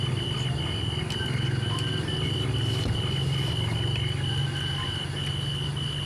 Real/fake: real